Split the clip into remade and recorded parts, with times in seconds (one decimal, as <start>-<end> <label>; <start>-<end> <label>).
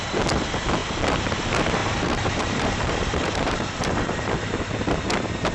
0.0-1.8 recorded; 1.8-4.3 remade; 4.3-5.5 recorded